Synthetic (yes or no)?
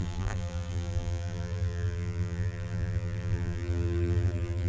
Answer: yes